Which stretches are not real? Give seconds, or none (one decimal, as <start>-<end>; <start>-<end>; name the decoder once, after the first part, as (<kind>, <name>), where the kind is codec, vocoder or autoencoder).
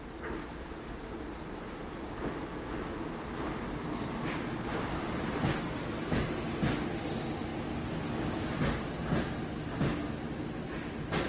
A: none